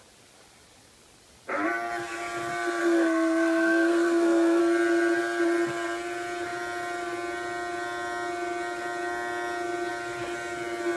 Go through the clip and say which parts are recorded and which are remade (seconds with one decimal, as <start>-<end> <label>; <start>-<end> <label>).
0.0-2.8 recorded; 2.8-4.6 remade; 4.6-11.0 recorded